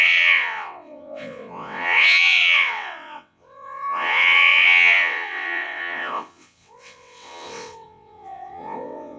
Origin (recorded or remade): remade